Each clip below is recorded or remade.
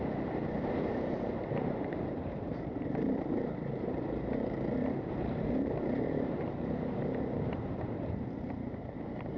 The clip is remade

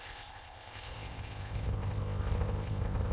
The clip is remade